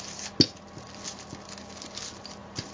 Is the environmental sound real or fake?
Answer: real